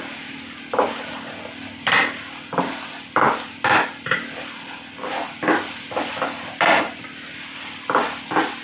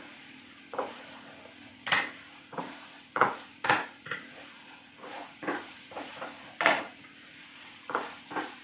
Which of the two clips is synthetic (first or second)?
second